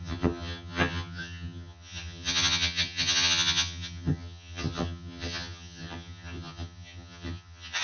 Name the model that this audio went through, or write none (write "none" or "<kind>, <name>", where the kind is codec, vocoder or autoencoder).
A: vocoder, HiFi-GAN